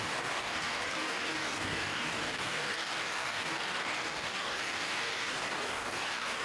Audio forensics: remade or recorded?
remade